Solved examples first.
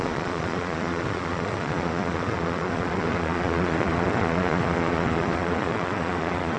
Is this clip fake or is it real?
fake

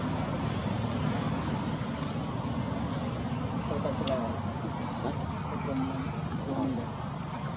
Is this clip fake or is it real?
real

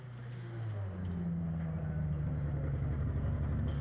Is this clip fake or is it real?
real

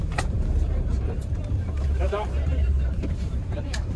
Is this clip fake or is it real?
fake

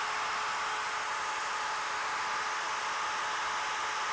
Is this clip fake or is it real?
real